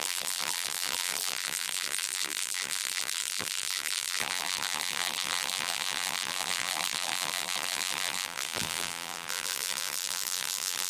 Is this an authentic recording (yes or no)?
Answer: no